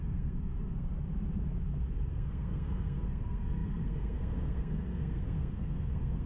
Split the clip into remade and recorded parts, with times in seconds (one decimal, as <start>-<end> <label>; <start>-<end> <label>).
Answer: 0.0-0.9 remade; 0.9-2.1 recorded; 2.1-6.3 remade